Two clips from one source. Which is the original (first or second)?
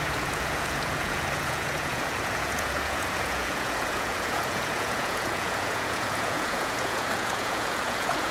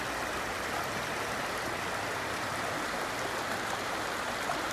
second